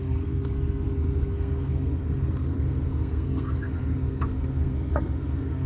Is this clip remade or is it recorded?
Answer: remade